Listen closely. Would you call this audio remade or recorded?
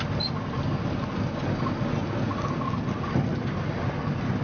recorded